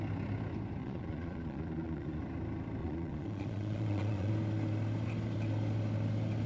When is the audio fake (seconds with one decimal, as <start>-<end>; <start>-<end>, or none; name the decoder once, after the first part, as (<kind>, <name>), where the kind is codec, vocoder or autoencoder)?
0.8-2.2 (vocoder, Vocos); 2.8-4.3